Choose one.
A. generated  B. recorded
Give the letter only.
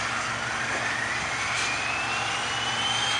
B